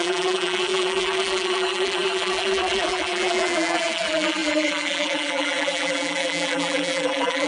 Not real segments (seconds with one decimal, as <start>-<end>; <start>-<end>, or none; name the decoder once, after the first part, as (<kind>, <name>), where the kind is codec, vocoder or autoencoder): 0.0-7.5 (vocoder, BigVGAN v2)